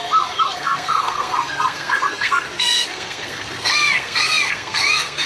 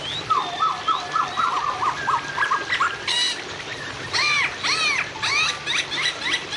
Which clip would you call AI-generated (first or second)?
first